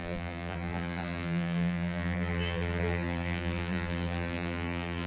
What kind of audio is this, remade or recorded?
remade